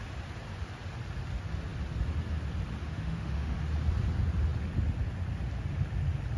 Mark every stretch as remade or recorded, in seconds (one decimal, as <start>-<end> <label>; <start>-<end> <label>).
0.0-2.8 recorded; 2.8-3.6 remade; 3.6-6.4 recorded